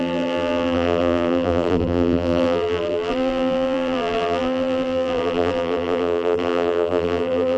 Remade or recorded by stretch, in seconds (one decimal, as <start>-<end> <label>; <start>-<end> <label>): 0.0-7.6 remade